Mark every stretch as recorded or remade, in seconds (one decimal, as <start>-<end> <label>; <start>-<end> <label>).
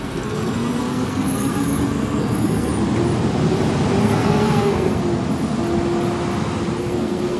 0.0-2.7 remade; 2.7-4.0 recorded; 4.0-5.0 remade; 5.0-6.8 recorded; 6.8-7.4 remade